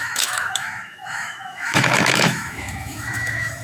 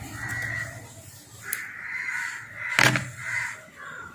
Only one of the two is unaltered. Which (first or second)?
second